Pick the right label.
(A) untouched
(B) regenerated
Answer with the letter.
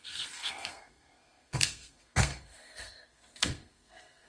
B